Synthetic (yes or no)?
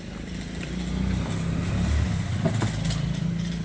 no